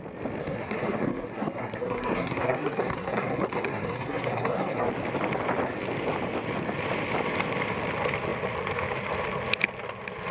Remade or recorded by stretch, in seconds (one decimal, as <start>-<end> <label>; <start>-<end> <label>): 0.0-0.4 recorded; 0.4-4.9 remade; 4.9-10.3 recorded